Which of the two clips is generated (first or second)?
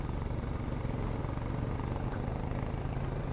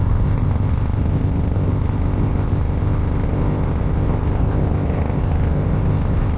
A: second